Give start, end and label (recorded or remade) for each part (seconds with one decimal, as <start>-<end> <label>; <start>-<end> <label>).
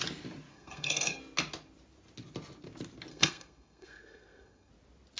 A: 0.0-0.5 recorded; 0.5-1.2 remade; 1.2-3.1 recorded; 3.1-4.7 remade; 4.7-5.2 recorded